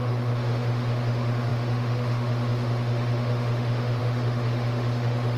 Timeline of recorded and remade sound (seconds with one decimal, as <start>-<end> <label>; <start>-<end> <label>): 0.0-5.4 remade